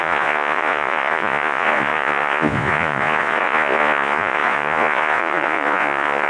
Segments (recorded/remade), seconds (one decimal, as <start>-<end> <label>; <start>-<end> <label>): 0.0-6.3 remade